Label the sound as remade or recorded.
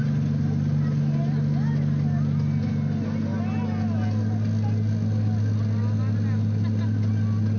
recorded